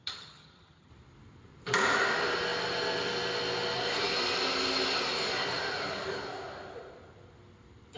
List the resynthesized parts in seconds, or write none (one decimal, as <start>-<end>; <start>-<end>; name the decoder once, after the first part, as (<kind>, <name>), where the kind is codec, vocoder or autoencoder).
0.0-0.9 (vocoder, HiFi-GAN)